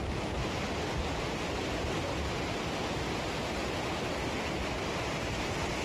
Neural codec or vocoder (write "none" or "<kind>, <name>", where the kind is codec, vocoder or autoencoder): none